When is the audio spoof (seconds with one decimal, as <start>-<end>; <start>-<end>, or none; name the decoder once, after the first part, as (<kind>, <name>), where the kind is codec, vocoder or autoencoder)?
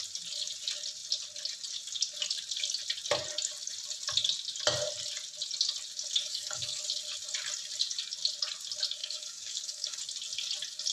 6.2-6.8 (codec, DAC); 9.0-10.0